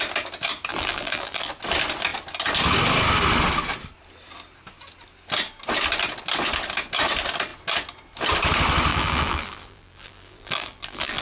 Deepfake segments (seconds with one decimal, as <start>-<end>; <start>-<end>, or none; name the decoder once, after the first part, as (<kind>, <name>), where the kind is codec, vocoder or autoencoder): 0.7-1.5 (vocoder, BigVGAN v2); 8.9-11.2